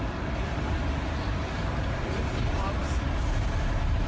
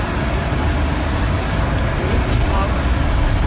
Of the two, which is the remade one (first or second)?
first